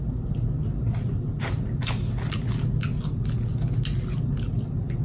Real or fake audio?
real